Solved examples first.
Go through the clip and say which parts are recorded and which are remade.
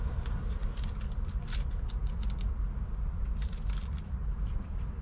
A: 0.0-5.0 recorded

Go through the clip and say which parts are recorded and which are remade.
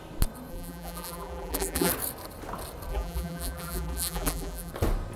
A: 0.0-0.5 recorded; 0.5-1.9 remade; 1.9-2.9 recorded; 2.9-4.7 remade; 4.7-5.2 recorded